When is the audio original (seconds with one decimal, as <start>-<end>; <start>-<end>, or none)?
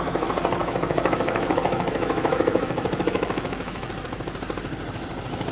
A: 0.0-0.6; 3.9-5.5